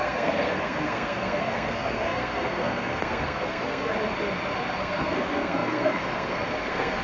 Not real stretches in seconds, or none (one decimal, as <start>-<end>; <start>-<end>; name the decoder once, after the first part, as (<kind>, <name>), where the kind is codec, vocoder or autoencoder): 0.0-3.9 (codec, SNAC); 4.8-7.0